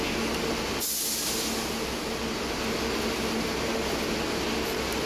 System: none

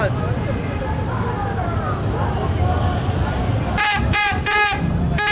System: none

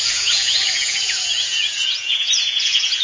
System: vocoder, Vocos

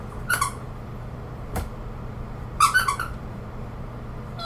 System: vocoder, BigVGAN v2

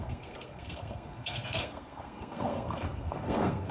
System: codec, SNAC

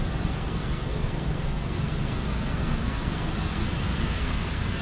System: codec, SNAC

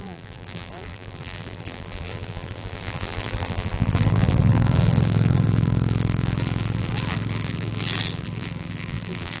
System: vocoder, BigVGAN v2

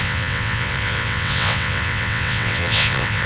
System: vocoder, WaveNeXt